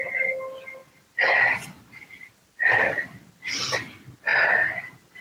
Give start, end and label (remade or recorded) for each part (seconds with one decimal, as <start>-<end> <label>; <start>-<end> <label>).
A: 0.0-0.8 recorded; 0.8-3.3 remade; 3.3-4.3 recorded; 4.3-5.2 remade